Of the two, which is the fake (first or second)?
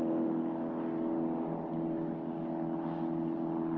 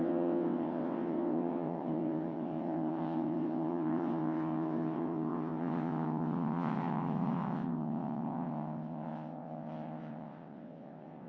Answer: second